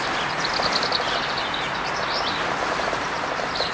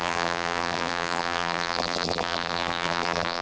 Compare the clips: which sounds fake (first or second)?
second